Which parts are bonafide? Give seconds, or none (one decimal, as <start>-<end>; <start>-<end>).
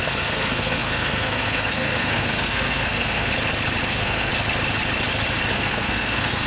3.3-3.9; 4.3-5.5